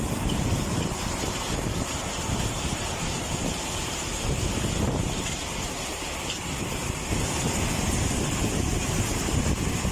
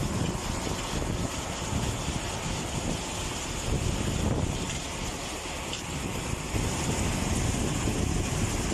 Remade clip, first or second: first